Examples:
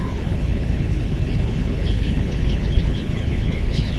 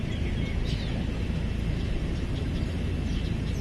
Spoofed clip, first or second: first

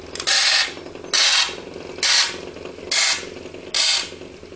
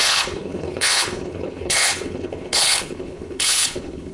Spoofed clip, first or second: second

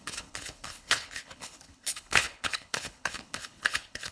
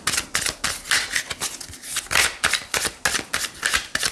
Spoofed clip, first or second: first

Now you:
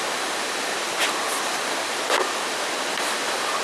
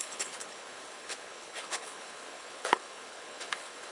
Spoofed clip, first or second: second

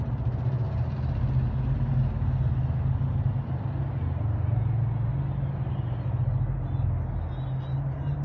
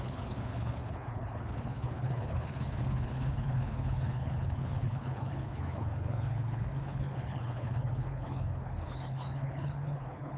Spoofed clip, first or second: second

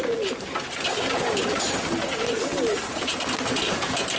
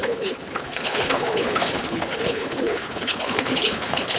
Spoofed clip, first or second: second